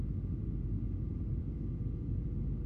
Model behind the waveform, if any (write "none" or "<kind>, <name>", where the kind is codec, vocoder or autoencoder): none